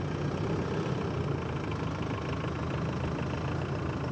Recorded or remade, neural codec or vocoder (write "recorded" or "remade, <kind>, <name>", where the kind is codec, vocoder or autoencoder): recorded